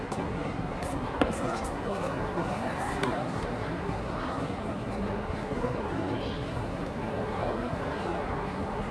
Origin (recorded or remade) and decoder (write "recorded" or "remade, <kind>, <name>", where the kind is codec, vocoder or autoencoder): remade, codec, SNAC